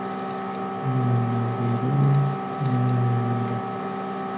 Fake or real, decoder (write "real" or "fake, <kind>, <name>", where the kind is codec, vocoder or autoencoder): real